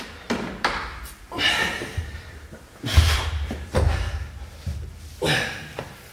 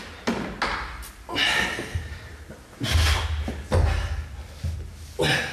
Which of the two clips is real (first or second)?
second